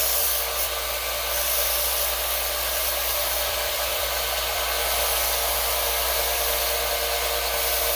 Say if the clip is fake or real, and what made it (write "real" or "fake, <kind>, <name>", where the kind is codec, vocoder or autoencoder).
fake, vocoder, BigVGAN v2